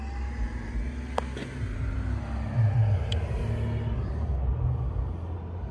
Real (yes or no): yes